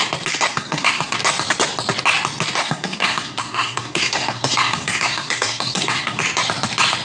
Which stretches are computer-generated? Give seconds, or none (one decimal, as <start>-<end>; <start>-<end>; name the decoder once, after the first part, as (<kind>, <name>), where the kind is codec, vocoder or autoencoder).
0.5-1.2 (codec, SNAC); 2.6-6.2

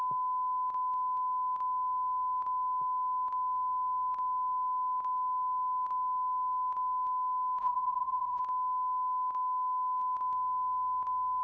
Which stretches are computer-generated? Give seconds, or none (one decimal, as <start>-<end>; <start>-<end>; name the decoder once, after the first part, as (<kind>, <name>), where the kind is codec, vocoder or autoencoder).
7.6-8.4 (vocoder, Vocos)

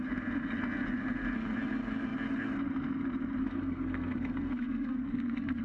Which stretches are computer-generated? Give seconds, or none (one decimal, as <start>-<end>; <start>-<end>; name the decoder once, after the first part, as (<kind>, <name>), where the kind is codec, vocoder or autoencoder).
3.4-5.6 (codec, SNAC)